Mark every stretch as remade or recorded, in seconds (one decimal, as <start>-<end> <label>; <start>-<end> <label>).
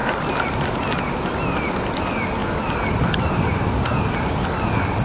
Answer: 0.0-5.0 recorded